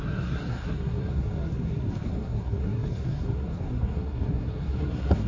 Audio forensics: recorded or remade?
remade